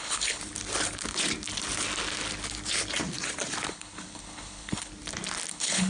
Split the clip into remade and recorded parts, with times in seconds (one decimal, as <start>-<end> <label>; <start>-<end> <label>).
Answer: 0.0-0.4 remade; 0.4-3.7 recorded; 3.7-4.9 remade; 4.9-5.5 recorded; 5.5-5.9 remade